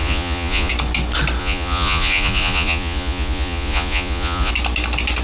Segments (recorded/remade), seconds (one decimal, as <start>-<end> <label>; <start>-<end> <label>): 0.0-0.7 remade; 0.7-1.4 recorded; 1.4-4.5 remade; 4.5-5.2 recorded